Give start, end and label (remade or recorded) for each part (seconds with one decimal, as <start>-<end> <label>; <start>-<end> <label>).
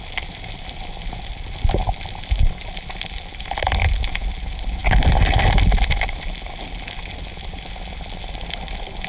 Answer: 0.0-9.1 recorded